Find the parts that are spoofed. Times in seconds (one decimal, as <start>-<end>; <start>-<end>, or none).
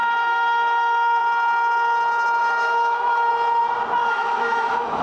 0.0-1.2; 2.4-3.3; 4.0-5.0